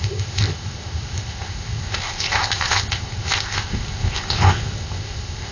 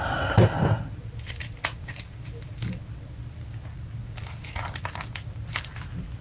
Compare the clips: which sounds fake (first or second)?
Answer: first